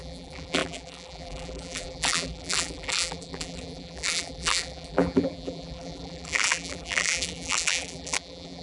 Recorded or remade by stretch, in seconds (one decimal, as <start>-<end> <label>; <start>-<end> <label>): 0.0-8.6 remade